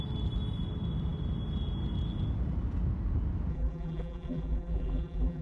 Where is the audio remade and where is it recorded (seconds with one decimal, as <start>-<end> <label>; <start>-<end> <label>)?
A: 0.0-3.5 recorded; 3.5-5.4 remade

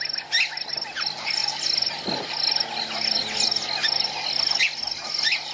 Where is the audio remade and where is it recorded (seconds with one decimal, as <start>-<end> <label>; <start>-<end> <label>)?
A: 0.0-5.5 recorded

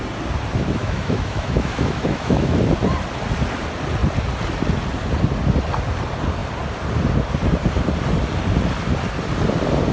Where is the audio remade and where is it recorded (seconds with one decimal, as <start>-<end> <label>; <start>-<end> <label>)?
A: 0.0-0.8 recorded; 0.8-2.6 remade; 2.6-9.9 recorded